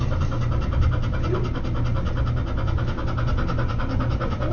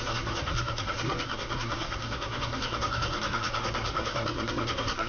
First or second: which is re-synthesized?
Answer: second